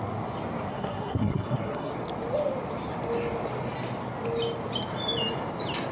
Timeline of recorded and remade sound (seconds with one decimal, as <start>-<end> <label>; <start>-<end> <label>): 0.0-0.7 recorded; 0.7-1.9 remade; 1.9-5.9 recorded